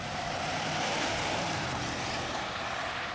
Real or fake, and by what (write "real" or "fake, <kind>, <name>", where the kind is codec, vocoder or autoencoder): fake, vocoder, BigVGAN v2